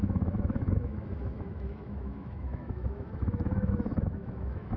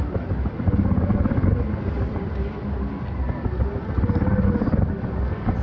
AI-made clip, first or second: first